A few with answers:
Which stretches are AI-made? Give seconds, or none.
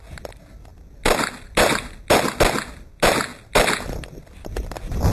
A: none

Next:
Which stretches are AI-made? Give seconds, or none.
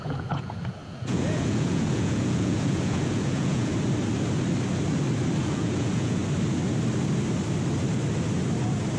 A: 0.0-3.7; 5.4-6.2